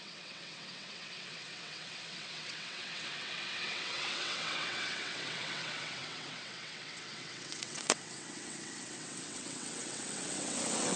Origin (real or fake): fake